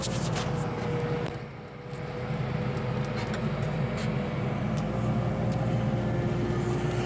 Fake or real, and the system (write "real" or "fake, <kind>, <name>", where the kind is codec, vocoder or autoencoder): real